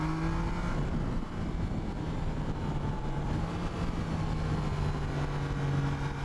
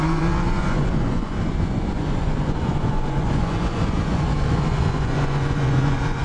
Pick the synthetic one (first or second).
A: second